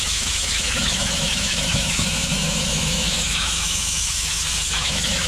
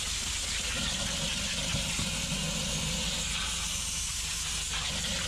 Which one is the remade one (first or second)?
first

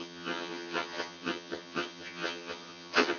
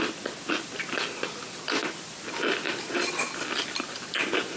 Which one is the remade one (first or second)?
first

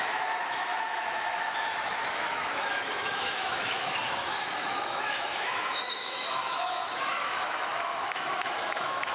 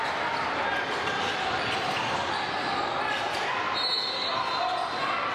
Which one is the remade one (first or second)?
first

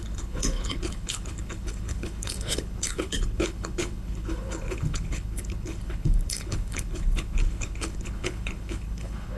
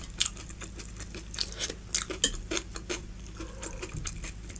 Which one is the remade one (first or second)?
first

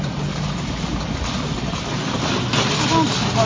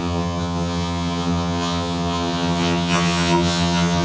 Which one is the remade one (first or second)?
second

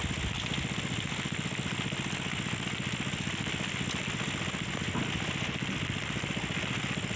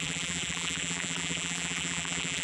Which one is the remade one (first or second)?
second